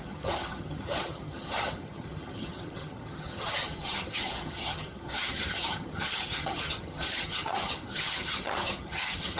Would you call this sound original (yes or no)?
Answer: no